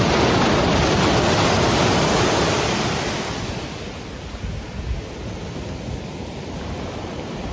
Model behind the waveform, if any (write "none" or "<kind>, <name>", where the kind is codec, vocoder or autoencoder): none